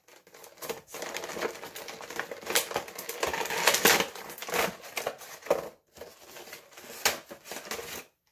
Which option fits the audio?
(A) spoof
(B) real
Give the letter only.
B